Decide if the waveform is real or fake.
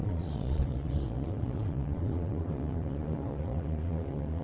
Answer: fake